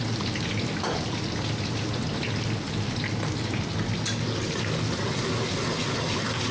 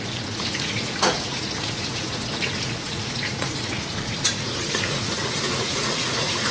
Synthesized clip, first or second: second